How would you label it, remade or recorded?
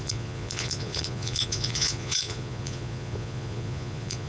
remade